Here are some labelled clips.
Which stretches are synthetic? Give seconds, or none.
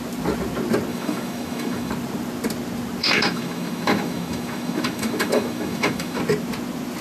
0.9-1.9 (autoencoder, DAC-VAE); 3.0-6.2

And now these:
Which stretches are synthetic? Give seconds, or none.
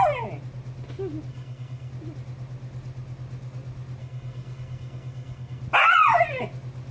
1.3-1.9 (codec, SNAC); 4.0-5.6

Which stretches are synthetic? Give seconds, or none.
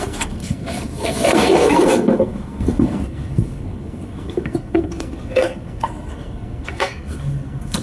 0.0-7.8 (codec, SNAC)